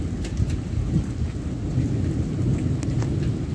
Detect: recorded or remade recorded